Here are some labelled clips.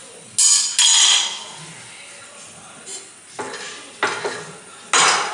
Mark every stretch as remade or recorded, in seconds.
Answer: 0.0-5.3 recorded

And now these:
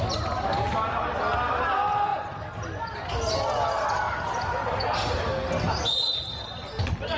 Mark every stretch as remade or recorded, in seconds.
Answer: 0.0-7.2 recorded

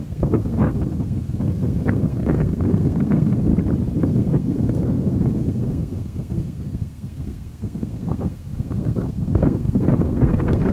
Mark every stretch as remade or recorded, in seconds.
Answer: 0.0-3.5 remade; 3.5-4.0 recorded; 4.0-10.7 remade

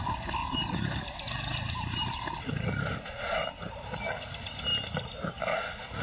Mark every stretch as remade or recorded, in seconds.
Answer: 0.0-0.4 recorded; 0.4-4.0 remade; 4.0-6.0 recorded

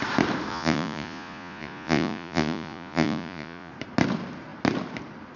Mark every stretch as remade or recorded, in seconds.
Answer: 0.0-0.5 recorded; 0.5-3.7 remade; 3.7-5.4 recorded

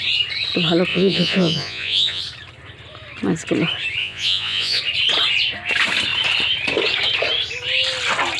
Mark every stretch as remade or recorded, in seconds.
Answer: 0.0-0.9 recorded; 0.9-2.2 remade; 2.2-4.0 recorded; 4.0-4.8 remade; 4.8-8.4 recorded

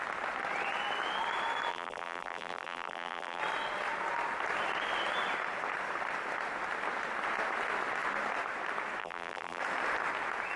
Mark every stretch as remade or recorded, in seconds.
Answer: 0.0-1.7 recorded; 1.7-3.4 remade; 3.4-9.0 recorded; 9.0-9.6 remade; 9.6-10.6 recorded